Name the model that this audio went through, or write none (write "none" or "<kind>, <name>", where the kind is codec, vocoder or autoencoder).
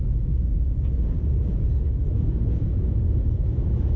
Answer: vocoder, Vocos